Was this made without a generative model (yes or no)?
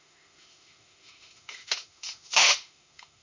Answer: no